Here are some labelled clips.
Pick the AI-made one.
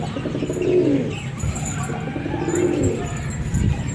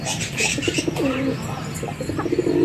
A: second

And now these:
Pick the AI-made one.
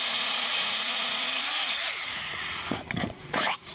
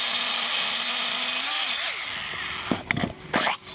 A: first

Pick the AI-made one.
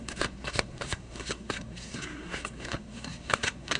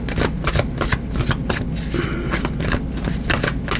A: first